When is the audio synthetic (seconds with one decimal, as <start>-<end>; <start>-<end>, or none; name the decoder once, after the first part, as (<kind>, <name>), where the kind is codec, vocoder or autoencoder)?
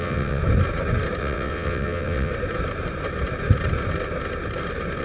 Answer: 0.0-0.4 (vocoder, WaveNeXt); 1.2-2.3